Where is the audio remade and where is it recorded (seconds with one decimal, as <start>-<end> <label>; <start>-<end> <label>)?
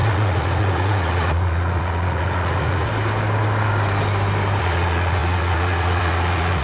0.0-2.9 remade; 2.9-4.6 recorded; 4.6-6.6 remade